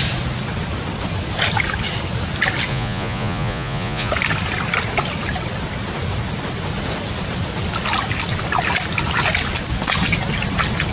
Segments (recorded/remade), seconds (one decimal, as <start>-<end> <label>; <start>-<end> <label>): 0.0-2.7 recorded; 2.7-4.1 remade; 4.1-10.9 recorded